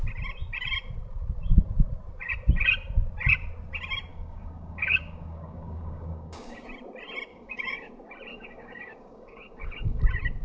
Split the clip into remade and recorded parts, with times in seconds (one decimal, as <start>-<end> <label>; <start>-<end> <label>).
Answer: 0.0-4.1 recorded; 4.1-6.7 remade; 6.7-7.3 recorded; 7.3-7.9 remade; 7.9-8.3 recorded; 8.3-10.0 remade; 10.0-10.4 recorded